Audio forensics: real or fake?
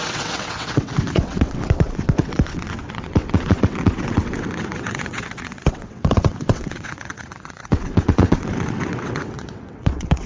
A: fake